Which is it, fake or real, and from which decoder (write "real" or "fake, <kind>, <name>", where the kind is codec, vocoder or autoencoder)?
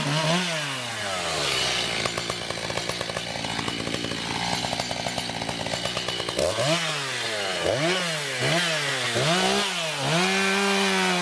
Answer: real